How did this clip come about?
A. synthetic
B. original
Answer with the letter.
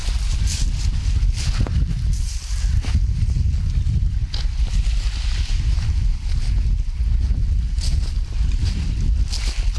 B